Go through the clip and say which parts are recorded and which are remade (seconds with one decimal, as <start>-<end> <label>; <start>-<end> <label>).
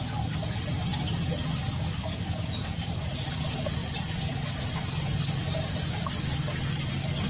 0.0-7.3 recorded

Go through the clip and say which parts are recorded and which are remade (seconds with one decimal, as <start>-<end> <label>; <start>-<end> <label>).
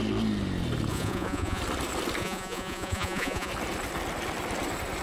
0.0-0.9 recorded; 0.9-1.6 remade; 1.6-2.2 recorded; 2.2-3.5 remade; 3.5-5.0 recorded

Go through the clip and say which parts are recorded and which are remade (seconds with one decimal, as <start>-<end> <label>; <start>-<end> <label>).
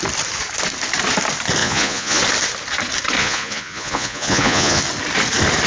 0.0-1.6 recorded; 1.6-2.2 remade; 2.2-3.2 recorded; 3.2-4.8 remade; 4.8-5.7 recorded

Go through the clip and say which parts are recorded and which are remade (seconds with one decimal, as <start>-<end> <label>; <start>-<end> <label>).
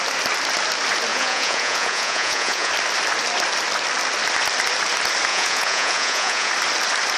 0.0-1.1 recorded; 1.1-2.7 remade; 2.7-5.3 recorded; 5.3-6.5 remade; 6.5-7.2 recorded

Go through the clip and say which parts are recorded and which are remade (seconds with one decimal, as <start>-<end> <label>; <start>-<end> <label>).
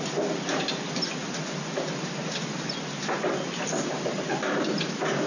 0.0-5.3 recorded